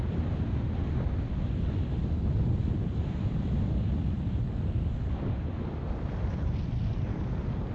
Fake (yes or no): no